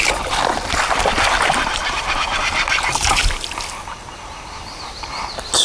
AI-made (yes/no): no